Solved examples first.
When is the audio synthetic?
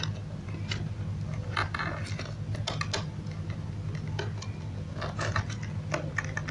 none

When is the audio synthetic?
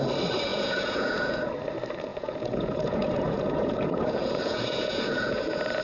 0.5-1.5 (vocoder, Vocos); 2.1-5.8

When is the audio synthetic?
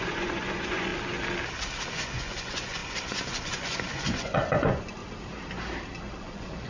0.0-0.9 (vocoder, Vocos); 1.9-5.0; 6.2-6.7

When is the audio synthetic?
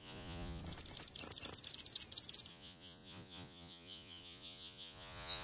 0.0-0.6 (vocoder, Vocos); 2.5-5.4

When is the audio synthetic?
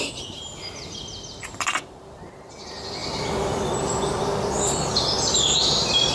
none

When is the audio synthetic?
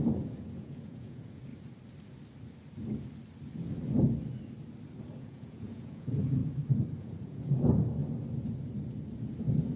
0.0-1.5 (vocoder, Vocos); 5.2-6.4; 7.0-8.0